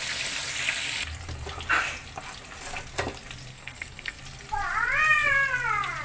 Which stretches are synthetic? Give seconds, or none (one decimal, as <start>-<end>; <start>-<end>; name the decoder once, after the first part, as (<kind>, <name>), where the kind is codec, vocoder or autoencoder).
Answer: 3.5-4.2 (codec, SNAC)

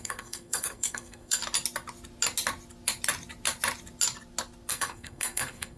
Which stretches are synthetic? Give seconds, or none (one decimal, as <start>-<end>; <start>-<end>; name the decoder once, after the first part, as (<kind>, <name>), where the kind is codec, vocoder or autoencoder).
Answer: 0.0-1.4 (codec, SNAC); 4.7-5.8

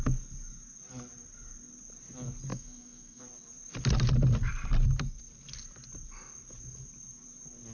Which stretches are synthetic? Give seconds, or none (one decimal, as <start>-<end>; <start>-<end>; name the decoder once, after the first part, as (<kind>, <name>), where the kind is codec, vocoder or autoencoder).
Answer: 2.5-3.2 (autoencoder, DAC-VAE)

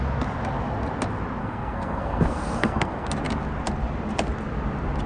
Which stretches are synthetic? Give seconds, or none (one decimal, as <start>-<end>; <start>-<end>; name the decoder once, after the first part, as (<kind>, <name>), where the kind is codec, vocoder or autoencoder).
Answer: 1.4-3.1 (codec, SNAC)

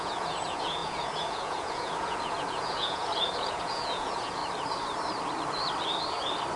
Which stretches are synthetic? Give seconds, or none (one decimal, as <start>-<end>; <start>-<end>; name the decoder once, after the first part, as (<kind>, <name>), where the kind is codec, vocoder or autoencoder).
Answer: 0.0-4.4 (vocoder, Vocos)

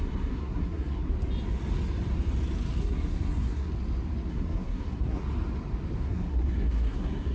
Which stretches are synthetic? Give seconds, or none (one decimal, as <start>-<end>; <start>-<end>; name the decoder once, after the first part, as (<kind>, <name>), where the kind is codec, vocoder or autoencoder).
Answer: 0.0-1.1 (codec, SNAC); 2.8-3.7; 4.3-5.2; 6.0-7.3

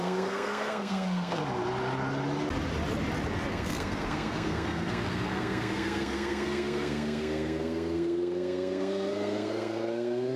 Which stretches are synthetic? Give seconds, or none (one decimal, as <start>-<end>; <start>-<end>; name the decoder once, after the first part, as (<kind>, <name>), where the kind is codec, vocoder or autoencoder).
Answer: 0.0-1.4 (codec, SNAC); 3.5-10.4

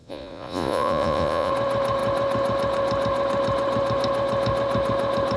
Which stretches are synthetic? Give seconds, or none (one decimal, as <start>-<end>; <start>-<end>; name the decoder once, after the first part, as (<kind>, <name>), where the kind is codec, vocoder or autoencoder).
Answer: 0.0-1.5 (vocoder, Vocos)